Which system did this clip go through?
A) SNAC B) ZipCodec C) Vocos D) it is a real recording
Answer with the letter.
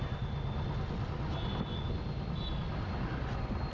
D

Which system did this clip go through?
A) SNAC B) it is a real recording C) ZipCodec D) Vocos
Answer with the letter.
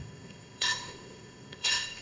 C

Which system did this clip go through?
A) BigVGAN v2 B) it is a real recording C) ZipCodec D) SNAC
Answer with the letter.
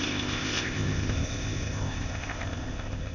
C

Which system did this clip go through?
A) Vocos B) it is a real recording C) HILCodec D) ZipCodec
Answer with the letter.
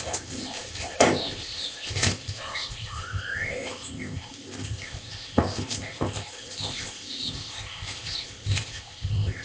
D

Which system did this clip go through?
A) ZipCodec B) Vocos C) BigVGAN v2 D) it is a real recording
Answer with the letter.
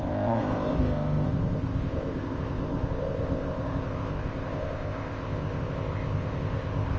A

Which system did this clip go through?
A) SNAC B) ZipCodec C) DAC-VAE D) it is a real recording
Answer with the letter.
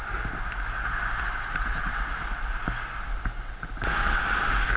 D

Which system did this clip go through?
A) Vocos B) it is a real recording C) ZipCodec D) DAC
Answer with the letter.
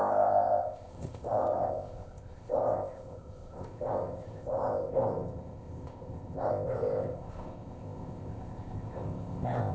C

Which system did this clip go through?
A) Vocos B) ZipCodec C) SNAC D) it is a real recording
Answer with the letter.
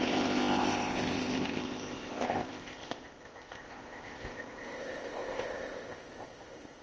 B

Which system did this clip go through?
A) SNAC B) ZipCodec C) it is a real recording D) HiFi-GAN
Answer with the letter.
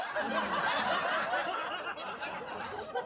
C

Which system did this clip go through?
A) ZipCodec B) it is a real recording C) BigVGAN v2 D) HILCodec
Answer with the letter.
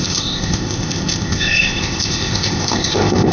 A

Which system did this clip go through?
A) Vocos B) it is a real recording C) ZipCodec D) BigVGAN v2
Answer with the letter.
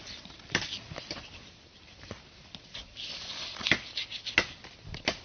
B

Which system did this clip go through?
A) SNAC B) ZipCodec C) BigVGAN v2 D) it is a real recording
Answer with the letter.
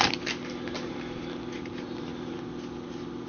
D